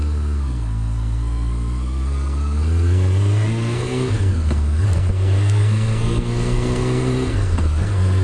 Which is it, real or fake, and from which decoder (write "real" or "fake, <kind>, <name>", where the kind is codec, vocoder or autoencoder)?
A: fake, codec, SNAC